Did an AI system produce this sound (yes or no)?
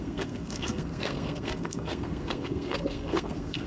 yes